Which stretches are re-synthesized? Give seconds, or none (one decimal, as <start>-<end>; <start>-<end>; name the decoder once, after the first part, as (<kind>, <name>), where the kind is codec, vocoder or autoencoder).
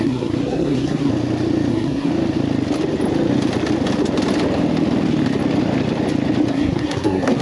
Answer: 0.0-1.1 (codec, SNAC); 1.7-2.1; 6.5-7.4